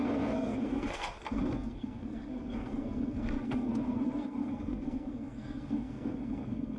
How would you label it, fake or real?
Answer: fake